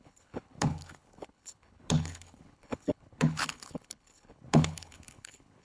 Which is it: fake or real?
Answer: fake